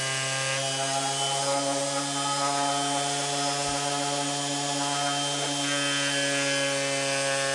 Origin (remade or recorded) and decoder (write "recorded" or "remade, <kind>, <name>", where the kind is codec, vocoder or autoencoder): recorded